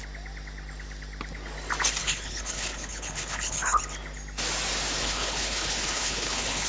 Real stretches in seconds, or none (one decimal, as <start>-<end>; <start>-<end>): 0.0-2.0; 3.8-5.0